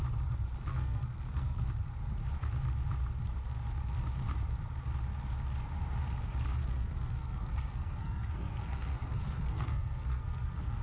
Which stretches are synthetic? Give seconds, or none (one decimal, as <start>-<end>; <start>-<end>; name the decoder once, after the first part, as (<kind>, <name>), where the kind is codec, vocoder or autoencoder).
0.7-1.7 (codec, SNAC); 6.6-10.8